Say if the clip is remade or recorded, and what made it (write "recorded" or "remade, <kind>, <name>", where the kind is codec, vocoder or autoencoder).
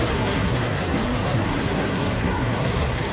remade, codec, SNAC